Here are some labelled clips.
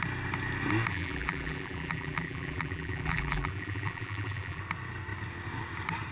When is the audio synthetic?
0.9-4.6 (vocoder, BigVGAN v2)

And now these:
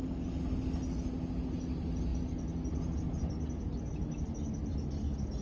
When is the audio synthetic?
none

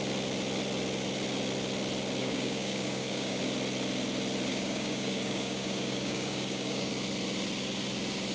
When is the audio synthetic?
2.2-3.4 (codec, DAC); 4.5-6.9

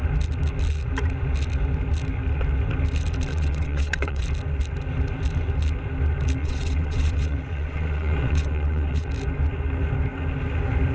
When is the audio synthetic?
3.3-4.2 (vocoder, WaveNeXt); 6.4-9.1

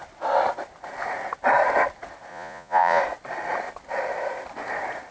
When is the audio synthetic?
2.3-3.0 (vocoder, Vocos)

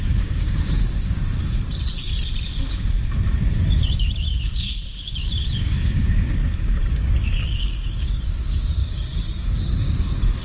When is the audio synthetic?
0.0-1.2 (codec, DAC); 5.6-10.4

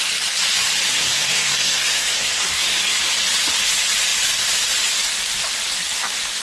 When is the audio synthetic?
1.0-3.0 (codec, SNAC)